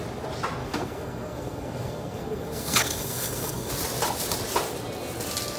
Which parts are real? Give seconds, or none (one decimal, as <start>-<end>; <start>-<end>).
0.0-0.6; 3.7-5.6